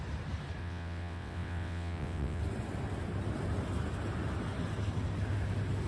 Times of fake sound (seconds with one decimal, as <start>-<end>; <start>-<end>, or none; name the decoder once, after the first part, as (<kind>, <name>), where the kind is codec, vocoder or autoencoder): 0.6-2.4 (vocoder, WaveNeXt)